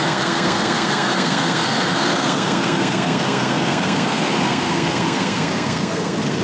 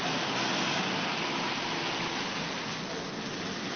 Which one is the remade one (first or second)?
first